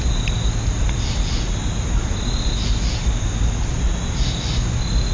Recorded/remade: recorded